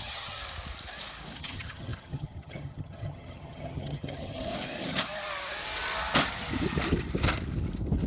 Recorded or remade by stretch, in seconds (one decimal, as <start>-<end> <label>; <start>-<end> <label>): 0.0-0.4 remade; 0.4-1.4 recorded; 1.4-4.5 remade; 4.5-8.1 recorded